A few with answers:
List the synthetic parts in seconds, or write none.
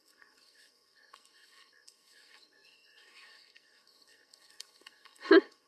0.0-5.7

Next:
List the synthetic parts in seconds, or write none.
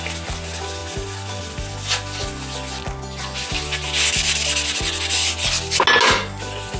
none